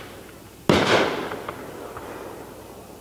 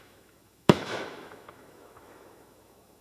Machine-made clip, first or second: second